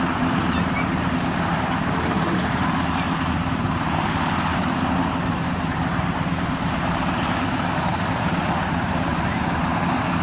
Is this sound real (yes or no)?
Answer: no